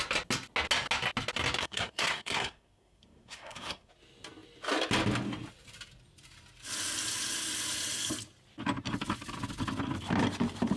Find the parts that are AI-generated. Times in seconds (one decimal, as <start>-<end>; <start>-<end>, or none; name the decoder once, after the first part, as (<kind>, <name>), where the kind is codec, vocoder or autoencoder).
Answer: 1.6-3.9 (codec, SNAC)